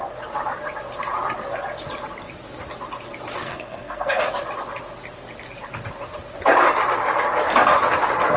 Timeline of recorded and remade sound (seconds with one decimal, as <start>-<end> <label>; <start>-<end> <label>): 0.0-3.4 recorded; 3.4-4.2 remade; 4.2-8.4 recorded